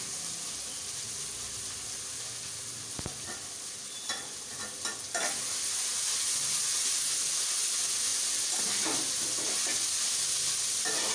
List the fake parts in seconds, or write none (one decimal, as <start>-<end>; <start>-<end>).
none

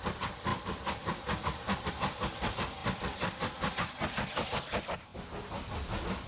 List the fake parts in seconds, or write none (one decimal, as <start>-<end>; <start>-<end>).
0.0-0.5; 1.9-5.1; 5.8-6.3

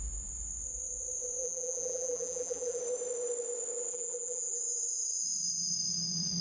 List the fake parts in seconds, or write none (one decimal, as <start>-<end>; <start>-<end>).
1.4-2.8; 3.9-4.6

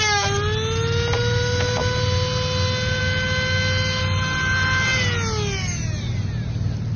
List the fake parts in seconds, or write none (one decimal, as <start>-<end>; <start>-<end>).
none